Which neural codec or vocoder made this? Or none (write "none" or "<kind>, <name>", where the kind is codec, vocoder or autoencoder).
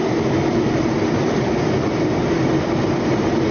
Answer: vocoder, BigVGAN v2